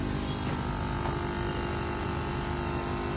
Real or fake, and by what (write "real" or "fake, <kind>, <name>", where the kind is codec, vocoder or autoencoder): real